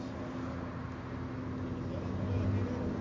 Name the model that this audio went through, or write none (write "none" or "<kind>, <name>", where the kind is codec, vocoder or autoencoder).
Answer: none